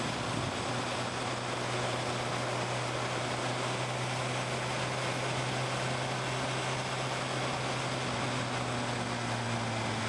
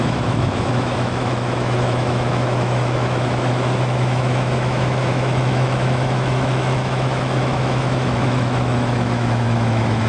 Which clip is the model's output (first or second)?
second